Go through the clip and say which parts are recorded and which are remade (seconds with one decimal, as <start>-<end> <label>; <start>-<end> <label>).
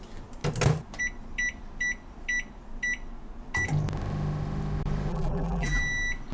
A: 0.0-5.1 recorded; 5.1-5.8 remade; 5.8-6.3 recorded